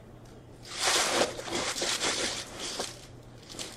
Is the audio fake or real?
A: fake